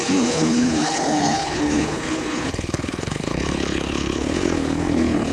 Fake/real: fake